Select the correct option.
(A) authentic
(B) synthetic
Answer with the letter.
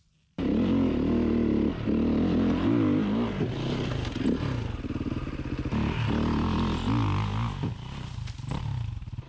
A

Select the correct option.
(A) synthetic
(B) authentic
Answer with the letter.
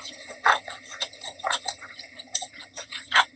A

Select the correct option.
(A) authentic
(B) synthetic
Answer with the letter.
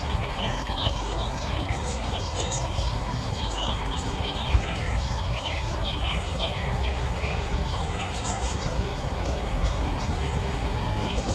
B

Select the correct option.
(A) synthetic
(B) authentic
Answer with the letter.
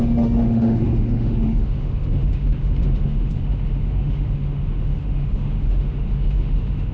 A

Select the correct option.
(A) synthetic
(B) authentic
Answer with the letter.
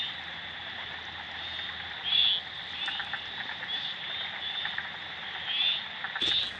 B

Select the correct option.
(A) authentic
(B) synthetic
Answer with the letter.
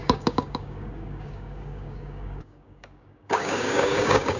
B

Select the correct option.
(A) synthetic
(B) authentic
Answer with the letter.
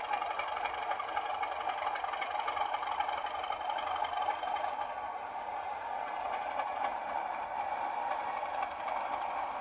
A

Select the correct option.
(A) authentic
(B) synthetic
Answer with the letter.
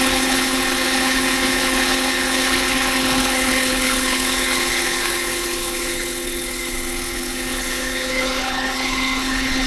B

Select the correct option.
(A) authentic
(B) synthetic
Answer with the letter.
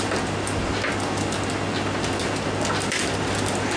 A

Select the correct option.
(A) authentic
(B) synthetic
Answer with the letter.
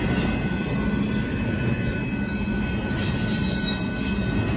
A